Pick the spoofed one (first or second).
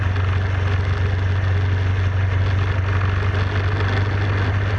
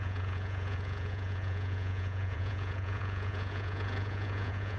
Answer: second